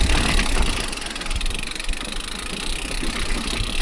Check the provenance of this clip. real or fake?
real